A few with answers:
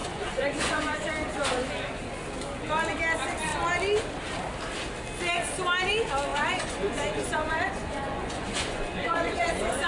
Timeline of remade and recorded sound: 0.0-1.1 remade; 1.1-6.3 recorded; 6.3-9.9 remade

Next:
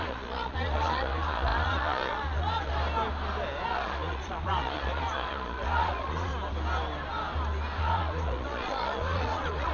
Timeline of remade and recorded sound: 0.0-2.7 remade; 2.7-3.7 recorded; 3.7-6.3 remade; 6.3-7.8 recorded; 7.8-9.7 remade

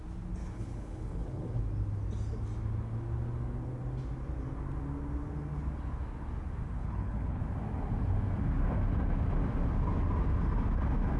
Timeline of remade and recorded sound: 0.0-0.4 recorded; 0.4-1.6 remade; 1.6-6.8 recorded; 6.8-7.4 remade; 7.4-11.2 recorded

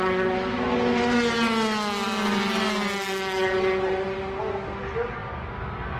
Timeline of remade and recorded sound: 0.0-6.0 recorded